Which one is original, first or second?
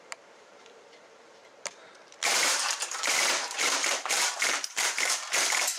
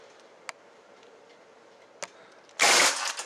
second